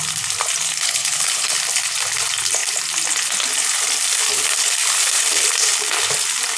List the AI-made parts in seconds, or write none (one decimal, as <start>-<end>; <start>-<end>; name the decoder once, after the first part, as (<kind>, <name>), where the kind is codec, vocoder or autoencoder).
0.7-1.6 (codec, HILCodec)